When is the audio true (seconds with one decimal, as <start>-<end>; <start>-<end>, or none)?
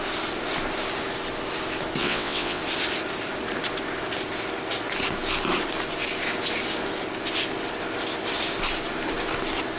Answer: 0.0-2.0; 2.6-9.8